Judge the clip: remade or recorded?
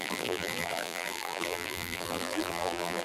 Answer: remade